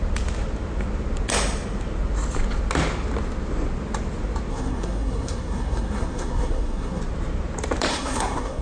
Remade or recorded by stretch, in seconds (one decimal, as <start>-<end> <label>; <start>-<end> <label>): 0.0-4.5 recorded; 4.5-7.0 remade; 7.0-7.9 recorded; 7.9-8.6 remade